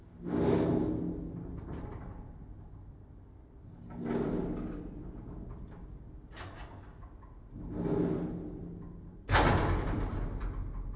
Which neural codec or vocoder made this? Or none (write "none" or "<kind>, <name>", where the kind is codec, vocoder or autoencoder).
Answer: none